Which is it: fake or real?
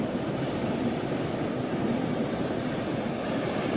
fake